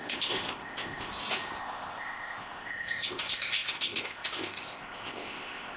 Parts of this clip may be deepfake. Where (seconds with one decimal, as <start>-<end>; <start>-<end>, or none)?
0.0-1.1; 1.6-5.8